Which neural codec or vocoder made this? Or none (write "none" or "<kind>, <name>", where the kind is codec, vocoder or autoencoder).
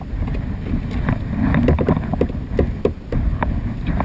none